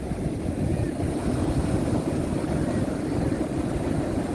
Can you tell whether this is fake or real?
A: real